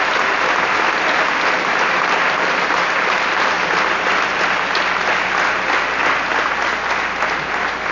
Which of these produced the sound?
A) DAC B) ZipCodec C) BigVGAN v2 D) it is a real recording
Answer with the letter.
D